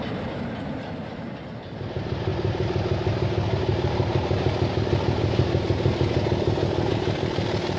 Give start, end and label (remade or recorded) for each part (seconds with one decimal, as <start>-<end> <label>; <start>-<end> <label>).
0.0-2.3 remade; 2.3-6.9 recorded; 6.9-7.8 remade